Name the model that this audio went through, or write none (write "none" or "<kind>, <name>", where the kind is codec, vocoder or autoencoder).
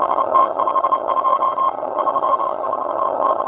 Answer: vocoder, HiFi-GAN